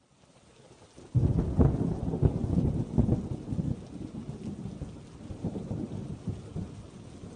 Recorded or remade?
recorded